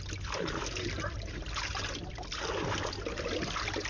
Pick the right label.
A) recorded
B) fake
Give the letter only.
A